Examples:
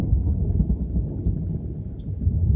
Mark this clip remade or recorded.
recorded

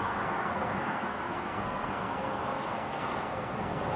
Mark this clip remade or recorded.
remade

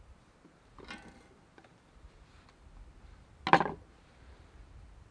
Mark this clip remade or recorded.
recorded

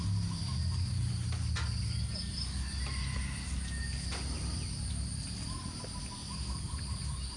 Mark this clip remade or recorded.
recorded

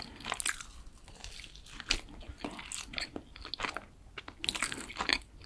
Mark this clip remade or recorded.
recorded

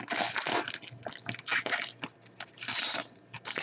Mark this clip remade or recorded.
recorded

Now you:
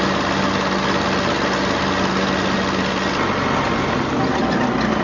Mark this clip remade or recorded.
recorded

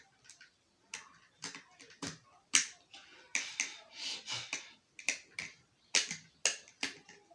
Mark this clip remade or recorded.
recorded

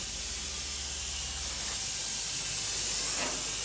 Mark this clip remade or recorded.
recorded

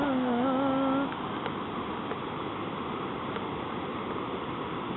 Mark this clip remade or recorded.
recorded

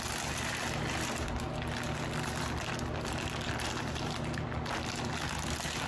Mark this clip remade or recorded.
recorded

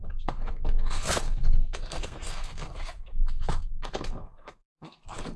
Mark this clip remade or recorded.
remade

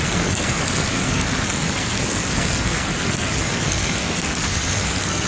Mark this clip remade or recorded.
remade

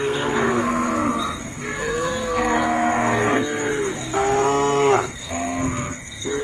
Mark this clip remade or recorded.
remade